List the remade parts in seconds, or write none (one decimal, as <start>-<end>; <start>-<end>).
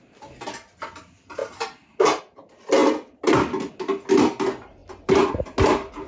1.4-2.2